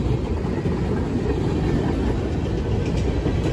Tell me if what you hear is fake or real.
real